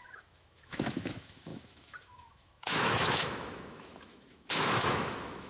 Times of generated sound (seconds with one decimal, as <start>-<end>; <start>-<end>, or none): 0.0-5.5